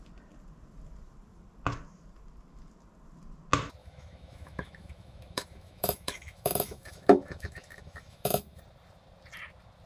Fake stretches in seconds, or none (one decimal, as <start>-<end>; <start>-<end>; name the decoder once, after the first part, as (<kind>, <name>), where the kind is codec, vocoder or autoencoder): 3.8-8.6 (autoencoder, DAC-VAE)